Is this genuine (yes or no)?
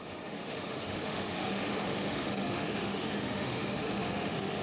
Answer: no